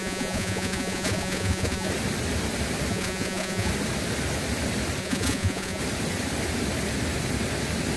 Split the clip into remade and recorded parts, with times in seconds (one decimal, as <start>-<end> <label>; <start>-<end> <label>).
0.0-1.9 remade; 1.9-2.9 recorded; 2.9-3.7 remade; 3.7-5.0 recorded; 5.0-5.8 remade; 5.8-8.0 recorded